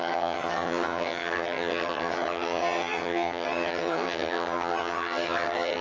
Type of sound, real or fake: fake